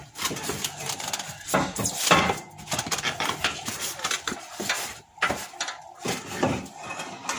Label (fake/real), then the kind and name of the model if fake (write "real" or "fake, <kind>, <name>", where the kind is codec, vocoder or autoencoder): fake, vocoder, BigVGAN v2